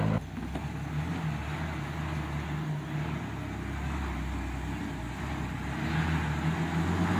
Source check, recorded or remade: recorded